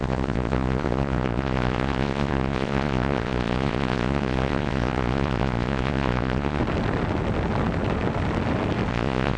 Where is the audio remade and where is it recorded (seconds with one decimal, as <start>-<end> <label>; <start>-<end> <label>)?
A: 0.0-6.6 remade; 6.6-8.9 recorded; 8.9-9.4 remade